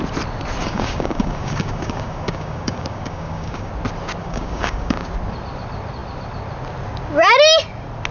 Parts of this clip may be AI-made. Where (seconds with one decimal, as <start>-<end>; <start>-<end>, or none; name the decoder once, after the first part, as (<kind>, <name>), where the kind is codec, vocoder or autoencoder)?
0.6-3.7 (codec, DAC); 4.2-5.1